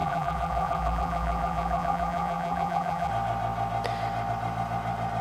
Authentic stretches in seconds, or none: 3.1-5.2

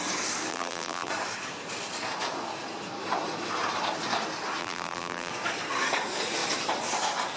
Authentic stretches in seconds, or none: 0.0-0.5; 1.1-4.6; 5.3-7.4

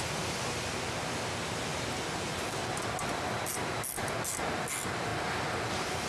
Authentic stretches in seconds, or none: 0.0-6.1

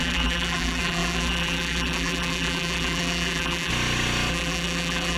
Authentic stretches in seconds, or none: 3.7-4.3

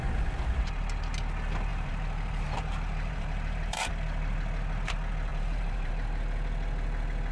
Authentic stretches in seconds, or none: 0.0-1.7; 3.9-5.3; 5.9-7.3